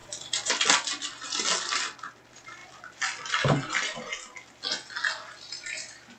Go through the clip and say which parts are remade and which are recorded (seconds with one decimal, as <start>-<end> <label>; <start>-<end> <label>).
0.0-0.5 remade; 0.5-2.6 recorded; 2.6-3.3 remade; 3.3-6.2 recorded